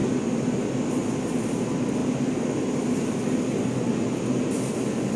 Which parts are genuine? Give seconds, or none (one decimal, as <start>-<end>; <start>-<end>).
0.0-2.0; 3.0-5.2